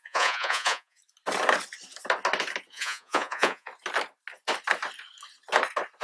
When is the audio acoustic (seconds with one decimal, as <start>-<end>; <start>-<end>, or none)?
1.0-2.7; 3.7-6.0